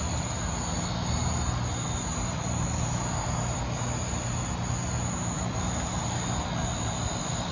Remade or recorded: recorded